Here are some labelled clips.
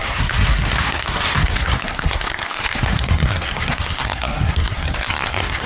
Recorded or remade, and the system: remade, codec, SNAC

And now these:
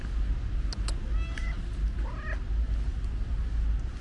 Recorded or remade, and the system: recorded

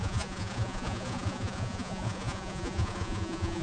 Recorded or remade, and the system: remade, vocoder, Vocos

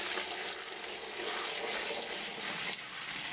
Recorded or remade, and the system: recorded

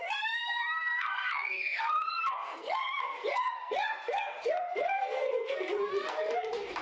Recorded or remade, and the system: remade, codec, SNAC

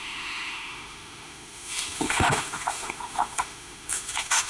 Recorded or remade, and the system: remade, autoencoder, DAC-VAE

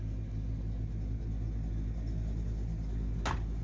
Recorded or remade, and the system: recorded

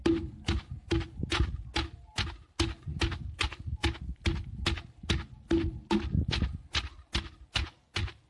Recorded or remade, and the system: recorded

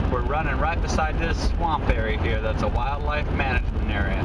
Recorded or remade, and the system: recorded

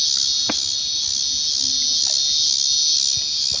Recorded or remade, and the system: recorded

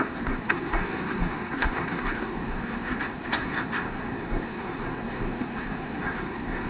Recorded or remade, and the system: remade, codec, SNAC